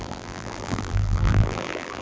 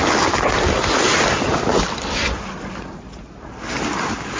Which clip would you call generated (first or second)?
first